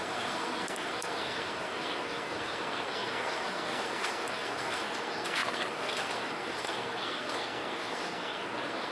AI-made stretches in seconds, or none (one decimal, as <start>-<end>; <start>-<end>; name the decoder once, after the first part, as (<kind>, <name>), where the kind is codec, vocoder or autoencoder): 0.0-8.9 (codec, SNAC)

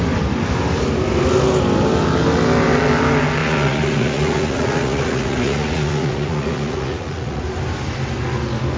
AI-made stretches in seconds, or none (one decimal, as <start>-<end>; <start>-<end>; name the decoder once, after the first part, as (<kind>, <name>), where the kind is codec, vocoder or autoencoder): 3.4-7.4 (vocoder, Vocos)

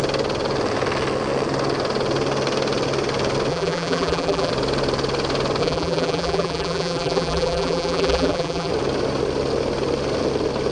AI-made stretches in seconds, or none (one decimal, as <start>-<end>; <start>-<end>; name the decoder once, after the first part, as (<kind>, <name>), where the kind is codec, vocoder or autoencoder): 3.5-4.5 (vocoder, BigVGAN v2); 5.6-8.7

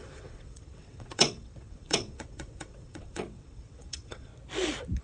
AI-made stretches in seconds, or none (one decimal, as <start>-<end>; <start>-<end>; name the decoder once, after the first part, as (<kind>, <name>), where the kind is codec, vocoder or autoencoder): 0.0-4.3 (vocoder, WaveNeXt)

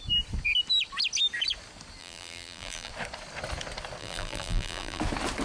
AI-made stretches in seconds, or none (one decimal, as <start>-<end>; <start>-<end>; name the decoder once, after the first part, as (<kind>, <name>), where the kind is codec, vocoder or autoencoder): 2.0-2.9 (vocoder, BigVGAN v2); 4.0-5.0

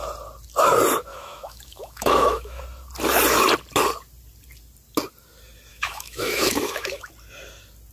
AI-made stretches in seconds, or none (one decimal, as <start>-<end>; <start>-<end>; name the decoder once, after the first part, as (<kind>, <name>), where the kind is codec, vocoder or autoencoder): 1.1-2.6 (autoencoder, DAC-VAE); 5.7-7.1

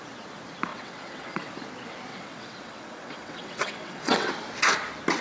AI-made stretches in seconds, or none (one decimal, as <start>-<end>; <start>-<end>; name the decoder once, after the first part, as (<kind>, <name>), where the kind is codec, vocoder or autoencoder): 0.7-1.5 (vocoder, WaveNeXt); 2.1-4.3

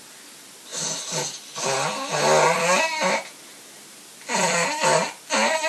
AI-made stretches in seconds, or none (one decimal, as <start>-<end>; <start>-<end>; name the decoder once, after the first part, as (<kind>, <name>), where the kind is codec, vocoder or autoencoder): none